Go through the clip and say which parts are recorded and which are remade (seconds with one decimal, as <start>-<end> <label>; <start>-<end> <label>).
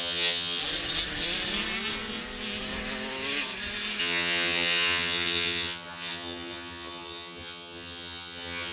0.0-0.6 remade; 0.6-4.0 recorded; 4.0-8.7 remade